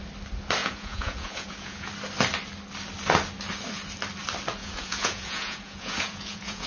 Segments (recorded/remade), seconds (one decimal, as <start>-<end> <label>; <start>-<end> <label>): 0.0-0.6 recorded; 0.6-1.9 remade; 1.9-4.6 recorded; 4.6-6.7 remade